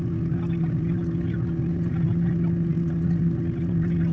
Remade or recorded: recorded